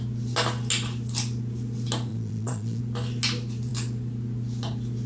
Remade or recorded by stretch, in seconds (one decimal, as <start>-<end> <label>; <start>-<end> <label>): 0.0-2.1 recorded; 2.1-2.8 remade; 2.8-5.1 recorded